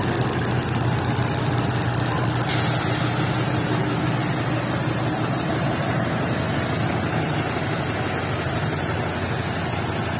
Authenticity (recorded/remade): recorded